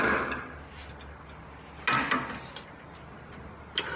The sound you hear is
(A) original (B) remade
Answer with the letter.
A